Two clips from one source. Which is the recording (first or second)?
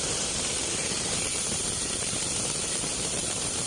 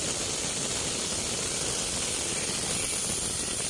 second